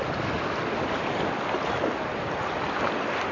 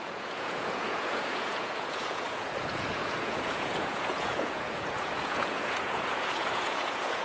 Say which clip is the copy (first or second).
second